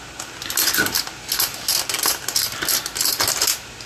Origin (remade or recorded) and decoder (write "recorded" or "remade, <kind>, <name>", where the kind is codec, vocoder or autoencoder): recorded